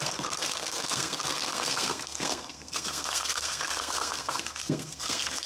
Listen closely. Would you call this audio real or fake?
fake